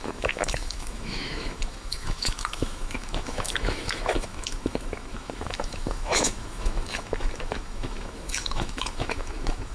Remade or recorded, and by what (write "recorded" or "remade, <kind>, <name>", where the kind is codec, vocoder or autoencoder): remade, autoencoder, DAC-VAE